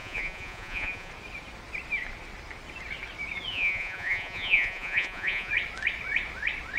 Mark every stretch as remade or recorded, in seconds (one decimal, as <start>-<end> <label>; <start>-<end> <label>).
0.0-1.1 remade; 1.1-3.5 recorded; 3.5-5.5 remade; 5.5-6.8 recorded